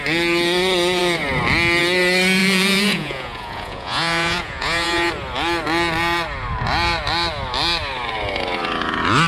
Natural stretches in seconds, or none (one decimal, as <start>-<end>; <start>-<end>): 0.0-2.4; 5.1-9.3